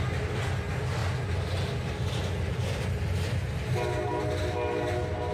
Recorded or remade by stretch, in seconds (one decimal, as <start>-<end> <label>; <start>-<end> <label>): 0.0-5.3 recorded